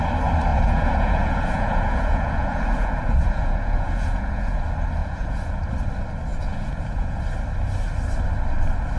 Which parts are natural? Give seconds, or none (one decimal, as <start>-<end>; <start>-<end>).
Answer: 0.0-0.5; 4.6-5.0; 5.6-6.3; 7.2-9.0